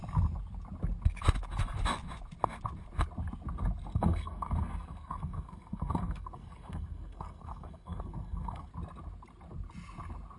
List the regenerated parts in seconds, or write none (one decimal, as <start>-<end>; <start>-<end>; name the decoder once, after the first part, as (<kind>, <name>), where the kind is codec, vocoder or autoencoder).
3.9-8.7 (codec, SNAC)